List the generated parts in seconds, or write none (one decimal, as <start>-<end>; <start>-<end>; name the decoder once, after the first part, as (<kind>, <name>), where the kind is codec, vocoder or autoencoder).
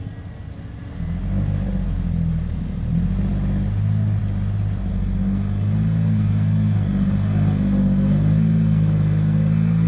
4.9-9.9 (codec, SNAC)